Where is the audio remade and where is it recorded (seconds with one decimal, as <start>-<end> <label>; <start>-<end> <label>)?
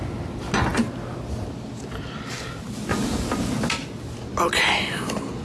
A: 0.0-5.4 recorded